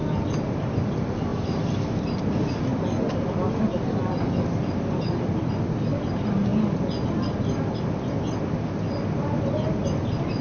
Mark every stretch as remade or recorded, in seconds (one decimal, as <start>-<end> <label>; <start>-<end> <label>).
0.0-10.4 recorded